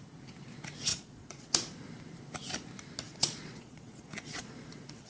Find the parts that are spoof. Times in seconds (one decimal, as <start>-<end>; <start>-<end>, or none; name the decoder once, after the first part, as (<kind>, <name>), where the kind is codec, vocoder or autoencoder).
0.9-1.5 (vocoder, Vocos); 3.1-5.1

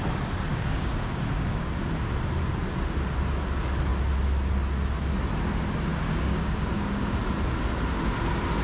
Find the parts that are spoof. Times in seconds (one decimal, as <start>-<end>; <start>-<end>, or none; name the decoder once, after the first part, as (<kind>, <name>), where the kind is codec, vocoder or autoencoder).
0.5-1.8 (codec, DAC); 5.9-7.2

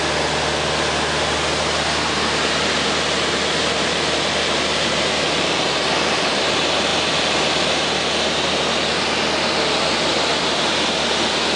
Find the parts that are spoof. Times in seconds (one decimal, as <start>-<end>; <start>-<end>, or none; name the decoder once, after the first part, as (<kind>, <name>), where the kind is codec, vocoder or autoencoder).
none

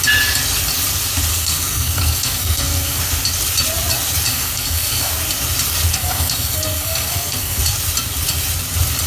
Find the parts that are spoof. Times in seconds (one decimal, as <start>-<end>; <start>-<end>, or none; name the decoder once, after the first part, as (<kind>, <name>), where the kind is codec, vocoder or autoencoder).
1.3-3.0 (codec, SNAC); 4.3-5.1; 5.9-7.6

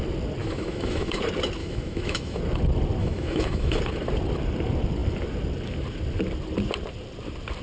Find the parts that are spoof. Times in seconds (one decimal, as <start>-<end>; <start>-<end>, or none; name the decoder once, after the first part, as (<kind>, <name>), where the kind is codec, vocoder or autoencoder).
0.4-1.2 (autoencoder, DAC-VAE); 1.6-2.4; 3.0-3.8